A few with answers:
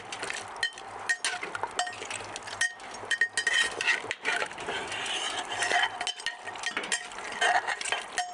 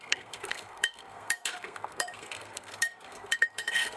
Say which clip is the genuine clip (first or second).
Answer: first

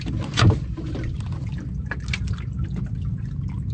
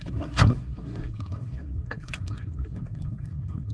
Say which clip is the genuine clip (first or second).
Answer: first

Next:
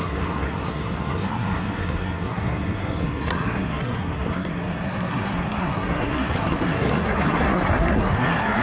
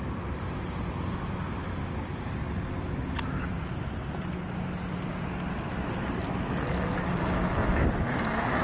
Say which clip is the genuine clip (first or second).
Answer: second